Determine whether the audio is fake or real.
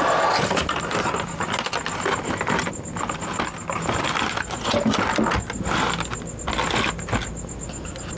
real